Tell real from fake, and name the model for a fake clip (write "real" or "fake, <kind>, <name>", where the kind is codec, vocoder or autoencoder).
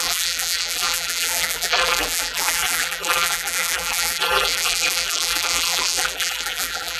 fake, vocoder, BigVGAN v2